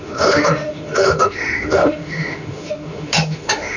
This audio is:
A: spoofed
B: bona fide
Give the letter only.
A